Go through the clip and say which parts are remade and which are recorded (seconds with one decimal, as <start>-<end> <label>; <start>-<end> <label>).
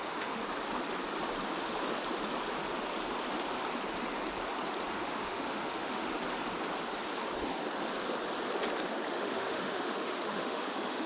0.0-0.4 remade; 0.4-4.9 recorded; 4.9-6.1 remade; 6.1-9.1 recorded; 9.1-11.1 remade